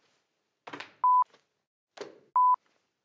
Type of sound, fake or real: real